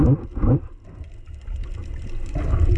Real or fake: real